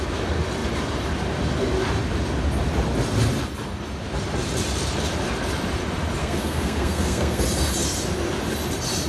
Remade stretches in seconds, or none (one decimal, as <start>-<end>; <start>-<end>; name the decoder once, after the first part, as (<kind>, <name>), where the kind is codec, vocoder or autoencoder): 6.2-7.4 (codec, SNAC)